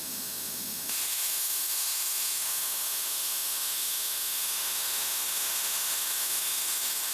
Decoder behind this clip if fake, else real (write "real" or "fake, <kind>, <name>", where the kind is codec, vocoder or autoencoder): fake, autoencoder, DAC-VAE